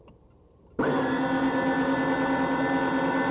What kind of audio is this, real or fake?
real